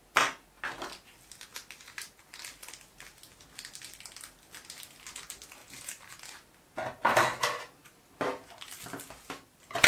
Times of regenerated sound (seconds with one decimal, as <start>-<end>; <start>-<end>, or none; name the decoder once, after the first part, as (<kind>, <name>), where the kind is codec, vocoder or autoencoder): 5.6-6.2 (vocoder, BigVGAN v2)